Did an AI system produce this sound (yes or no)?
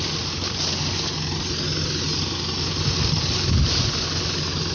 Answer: no